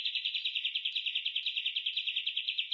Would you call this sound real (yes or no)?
no